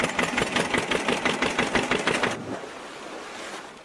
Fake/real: real